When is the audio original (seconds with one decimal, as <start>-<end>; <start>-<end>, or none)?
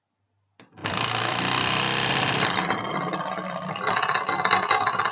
0.0-0.8; 3.9-5.1